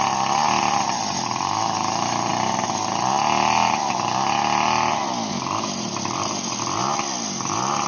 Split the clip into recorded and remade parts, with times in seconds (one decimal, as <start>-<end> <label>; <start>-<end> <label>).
0.0-7.9 recorded

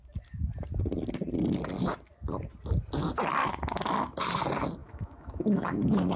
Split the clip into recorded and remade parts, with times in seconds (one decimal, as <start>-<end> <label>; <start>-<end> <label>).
0.0-4.8 recorded; 4.8-6.2 remade

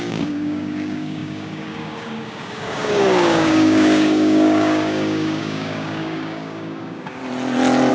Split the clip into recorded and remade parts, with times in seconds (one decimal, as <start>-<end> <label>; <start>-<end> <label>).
0.0-7.2 remade; 7.2-7.9 recorded

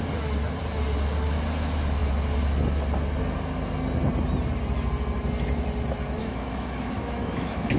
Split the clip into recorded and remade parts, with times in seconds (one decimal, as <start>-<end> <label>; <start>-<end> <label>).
0.0-6.2 recorded; 6.2-7.8 remade

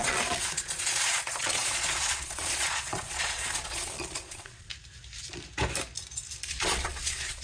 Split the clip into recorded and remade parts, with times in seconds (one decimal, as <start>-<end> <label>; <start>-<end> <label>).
0.0-4.7 remade; 4.7-6.5 recorded; 6.5-7.4 remade

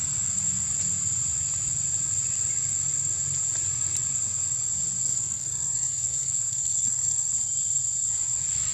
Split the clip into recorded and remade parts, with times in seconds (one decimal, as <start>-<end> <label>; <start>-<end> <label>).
0.0-5.0 recorded; 5.0-7.3 remade; 7.3-8.7 recorded

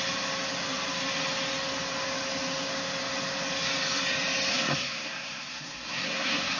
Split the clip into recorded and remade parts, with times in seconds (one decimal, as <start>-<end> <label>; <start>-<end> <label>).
0.0-4.5 recorded; 4.5-6.6 remade